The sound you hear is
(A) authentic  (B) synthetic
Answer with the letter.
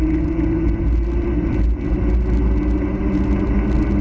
A